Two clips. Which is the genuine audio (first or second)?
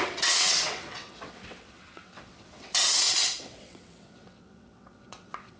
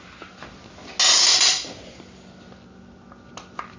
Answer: second